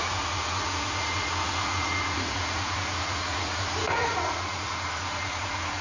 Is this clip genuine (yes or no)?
no